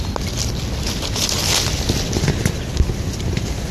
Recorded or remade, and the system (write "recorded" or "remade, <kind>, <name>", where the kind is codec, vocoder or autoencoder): recorded